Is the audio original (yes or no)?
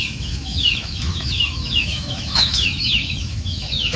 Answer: no